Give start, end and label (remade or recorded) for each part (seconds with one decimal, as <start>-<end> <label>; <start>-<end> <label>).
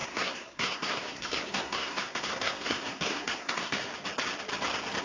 0.0-3.9 remade; 3.9-5.0 recorded